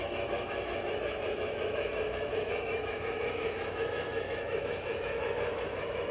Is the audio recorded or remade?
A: remade